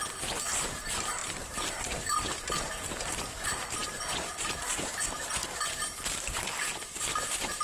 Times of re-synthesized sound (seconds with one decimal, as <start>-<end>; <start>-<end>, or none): 1.2-3.1

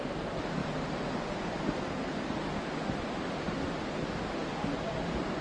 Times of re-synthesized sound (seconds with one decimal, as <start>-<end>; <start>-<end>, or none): none

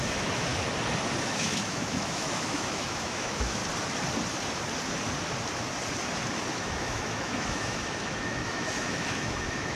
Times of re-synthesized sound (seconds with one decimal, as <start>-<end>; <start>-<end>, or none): 0.0-0.5; 1.2-3.6; 6.5-9.8